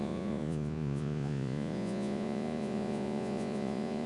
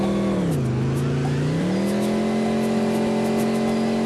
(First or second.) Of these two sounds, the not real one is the first